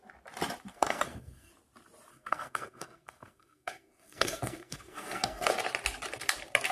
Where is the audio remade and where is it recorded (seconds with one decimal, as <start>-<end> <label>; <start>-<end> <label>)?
0.0-0.7 recorded; 0.7-1.5 remade; 1.5-2.1 recorded; 2.1-5.5 remade; 5.5-6.7 recorded